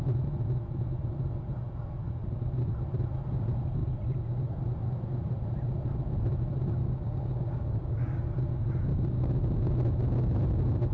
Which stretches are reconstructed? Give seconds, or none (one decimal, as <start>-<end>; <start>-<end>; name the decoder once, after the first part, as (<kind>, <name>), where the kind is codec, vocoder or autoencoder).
6.8-8.2 (codec, DAC)